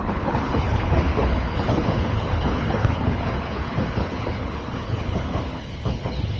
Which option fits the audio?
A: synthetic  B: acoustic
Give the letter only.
A